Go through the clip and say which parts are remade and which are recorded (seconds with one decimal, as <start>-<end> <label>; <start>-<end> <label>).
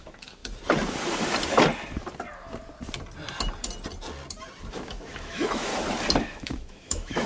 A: 0.0-0.4 remade; 0.4-4.7 recorded; 4.7-5.7 remade; 5.7-6.2 recorded; 6.2-7.3 remade